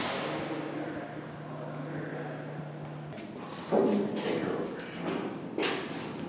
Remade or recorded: recorded